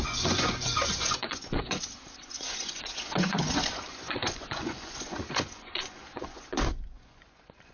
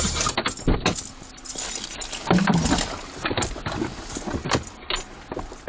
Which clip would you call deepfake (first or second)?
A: first